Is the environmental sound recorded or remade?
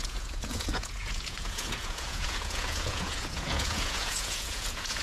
remade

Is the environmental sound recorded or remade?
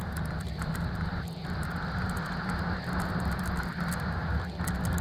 recorded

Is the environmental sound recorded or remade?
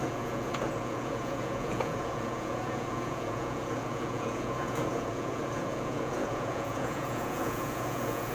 remade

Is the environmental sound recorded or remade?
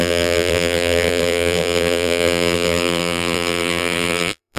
remade